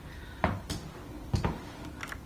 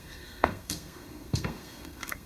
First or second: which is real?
first